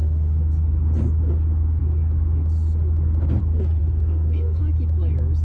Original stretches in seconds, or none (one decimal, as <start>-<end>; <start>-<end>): 0.0-3.8; 4.6-5.4